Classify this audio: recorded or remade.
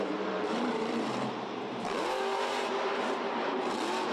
remade